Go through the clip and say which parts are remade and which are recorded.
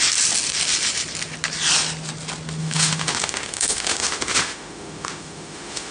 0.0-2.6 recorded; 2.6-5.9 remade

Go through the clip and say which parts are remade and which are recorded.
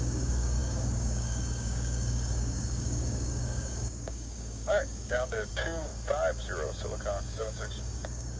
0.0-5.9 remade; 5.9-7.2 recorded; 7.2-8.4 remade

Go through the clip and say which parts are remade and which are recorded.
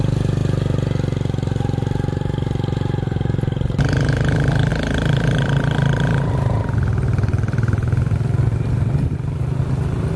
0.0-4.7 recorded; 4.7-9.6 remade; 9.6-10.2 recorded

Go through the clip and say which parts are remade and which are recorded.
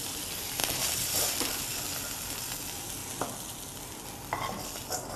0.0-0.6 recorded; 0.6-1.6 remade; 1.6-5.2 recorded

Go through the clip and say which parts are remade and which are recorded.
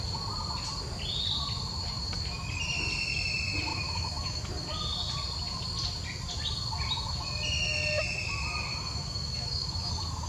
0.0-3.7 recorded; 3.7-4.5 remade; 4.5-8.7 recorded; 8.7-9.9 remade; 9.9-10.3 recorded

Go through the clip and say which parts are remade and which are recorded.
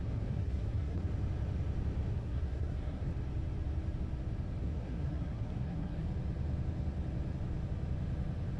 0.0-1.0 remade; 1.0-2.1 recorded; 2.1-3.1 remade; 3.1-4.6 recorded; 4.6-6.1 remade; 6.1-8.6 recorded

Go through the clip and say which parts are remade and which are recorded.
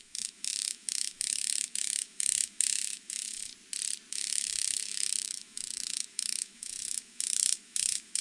0.0-3.5 remade; 3.5-4.1 recorded; 4.1-8.2 remade